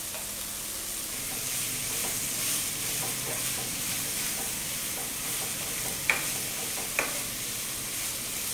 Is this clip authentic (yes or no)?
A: yes